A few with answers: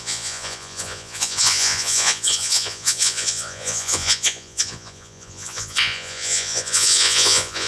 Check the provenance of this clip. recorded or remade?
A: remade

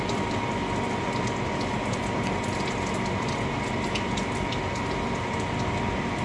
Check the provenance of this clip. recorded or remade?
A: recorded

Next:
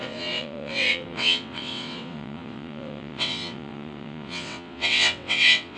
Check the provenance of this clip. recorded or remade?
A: remade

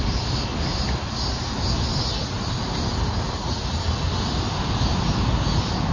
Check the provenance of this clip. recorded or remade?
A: recorded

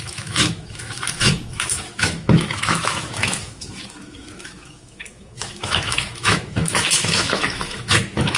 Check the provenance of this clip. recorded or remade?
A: remade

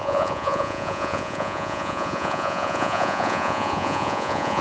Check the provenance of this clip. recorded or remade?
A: remade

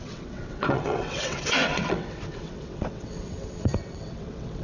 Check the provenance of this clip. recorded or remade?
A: remade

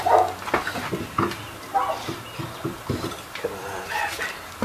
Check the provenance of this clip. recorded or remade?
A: recorded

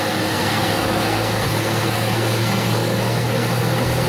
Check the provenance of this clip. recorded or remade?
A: remade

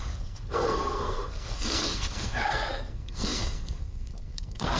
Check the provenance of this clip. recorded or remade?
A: remade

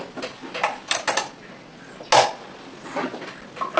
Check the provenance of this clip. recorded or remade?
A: recorded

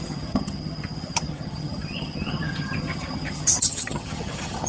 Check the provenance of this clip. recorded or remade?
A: remade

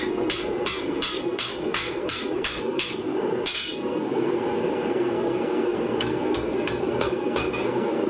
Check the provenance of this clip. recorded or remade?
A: remade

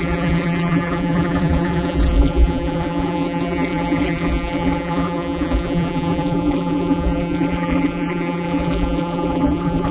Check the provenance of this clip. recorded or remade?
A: remade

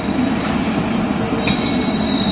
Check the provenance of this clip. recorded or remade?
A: recorded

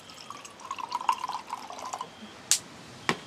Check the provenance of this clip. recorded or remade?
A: recorded